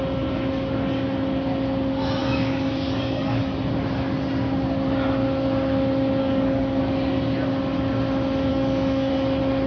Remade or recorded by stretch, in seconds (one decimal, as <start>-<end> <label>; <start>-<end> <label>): 0.0-2.2 recorded; 2.2-3.4 remade; 3.4-6.2 recorded; 6.2-6.8 remade; 6.8-8.5 recorded; 8.5-9.1 remade; 9.1-9.7 recorded

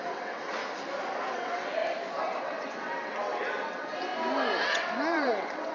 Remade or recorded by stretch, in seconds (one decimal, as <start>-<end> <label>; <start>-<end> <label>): 0.0-0.6 remade; 0.6-1.3 recorded; 1.3-1.8 remade; 1.8-2.4 recorded; 2.4-4.1 remade; 4.1-4.6 recorded; 4.6-5.7 remade